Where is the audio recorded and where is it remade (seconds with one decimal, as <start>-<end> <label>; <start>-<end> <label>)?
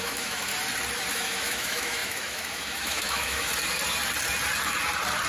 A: 0.0-0.5 remade; 0.5-1.1 recorded; 1.1-3.5 remade; 3.5-5.3 recorded